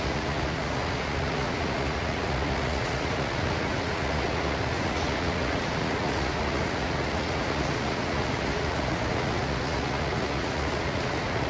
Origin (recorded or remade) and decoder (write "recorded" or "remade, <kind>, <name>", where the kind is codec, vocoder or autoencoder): remade, vocoder, Vocos